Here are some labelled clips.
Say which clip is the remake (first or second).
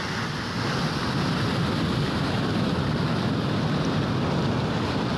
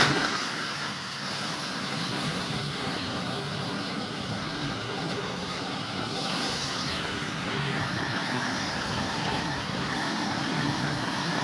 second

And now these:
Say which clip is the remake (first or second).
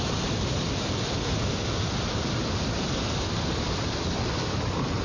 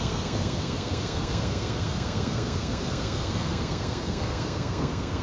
second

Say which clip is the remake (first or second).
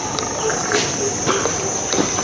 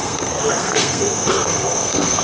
second